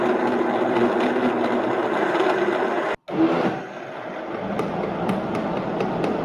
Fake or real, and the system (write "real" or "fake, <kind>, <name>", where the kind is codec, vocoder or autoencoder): real